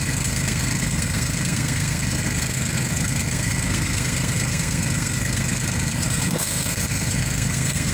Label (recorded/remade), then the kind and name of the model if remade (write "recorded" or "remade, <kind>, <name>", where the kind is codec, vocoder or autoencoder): remade, codec, SNAC